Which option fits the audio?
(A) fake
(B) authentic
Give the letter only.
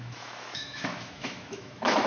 A